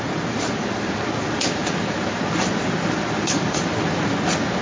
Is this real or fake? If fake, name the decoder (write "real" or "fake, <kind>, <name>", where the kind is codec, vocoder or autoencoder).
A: real